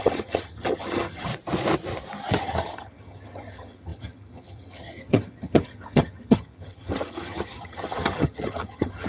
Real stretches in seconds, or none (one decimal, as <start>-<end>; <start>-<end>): 1.3-2.4